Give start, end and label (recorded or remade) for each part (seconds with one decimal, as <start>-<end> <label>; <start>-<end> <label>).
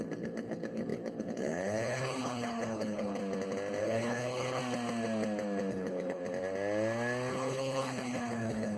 0.0-3.2 remade; 3.2-3.8 recorded; 3.8-4.6 remade; 4.6-5.7 recorded; 5.7-6.2 remade; 6.2-7.3 recorded; 7.3-8.8 remade